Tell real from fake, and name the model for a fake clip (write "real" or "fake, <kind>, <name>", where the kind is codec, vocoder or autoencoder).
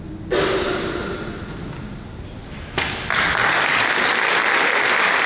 real